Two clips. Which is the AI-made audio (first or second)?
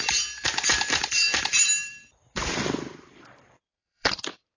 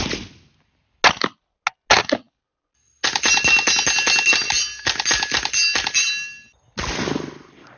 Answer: first